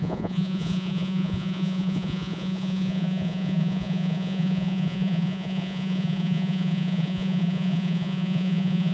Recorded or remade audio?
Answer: remade